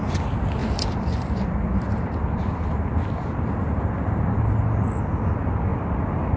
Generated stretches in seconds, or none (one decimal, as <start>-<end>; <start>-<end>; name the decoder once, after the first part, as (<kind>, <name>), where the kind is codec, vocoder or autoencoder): 0.6-4.4 (vocoder, BigVGAN v2); 5.7-6.4